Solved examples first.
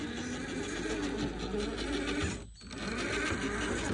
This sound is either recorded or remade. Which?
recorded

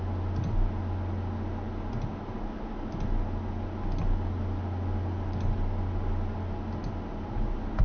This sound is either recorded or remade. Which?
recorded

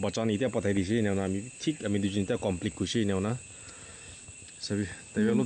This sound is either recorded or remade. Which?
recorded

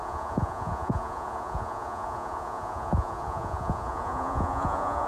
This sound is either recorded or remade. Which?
remade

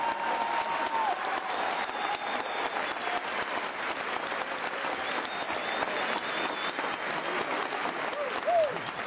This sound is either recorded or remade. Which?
recorded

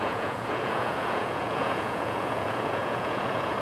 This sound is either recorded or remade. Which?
remade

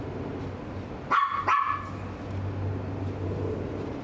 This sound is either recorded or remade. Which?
recorded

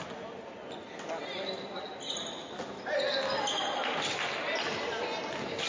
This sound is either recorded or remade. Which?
recorded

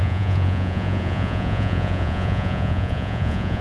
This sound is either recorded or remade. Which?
remade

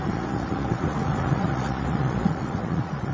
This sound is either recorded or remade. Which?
remade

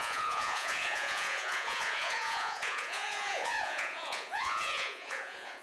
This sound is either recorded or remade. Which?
remade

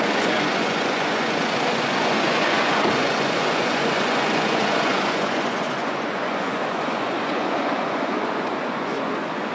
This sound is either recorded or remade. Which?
remade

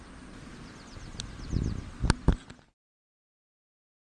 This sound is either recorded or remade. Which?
recorded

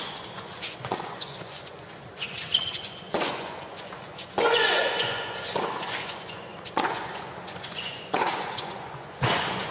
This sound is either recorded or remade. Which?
remade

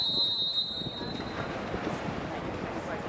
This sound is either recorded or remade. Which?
recorded